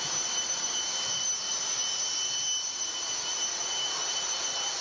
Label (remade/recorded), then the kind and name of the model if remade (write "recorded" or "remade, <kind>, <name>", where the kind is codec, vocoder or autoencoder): recorded